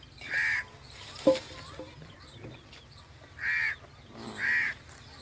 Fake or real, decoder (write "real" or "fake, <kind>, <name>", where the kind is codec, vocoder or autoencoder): real